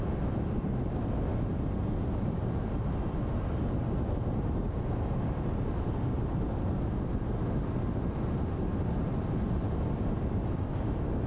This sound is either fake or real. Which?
real